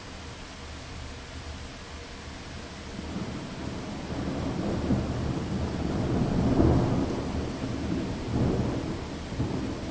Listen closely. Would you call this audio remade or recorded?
recorded